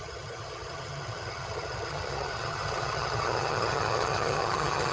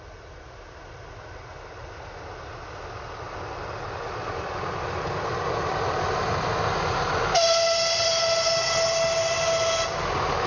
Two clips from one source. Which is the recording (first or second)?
second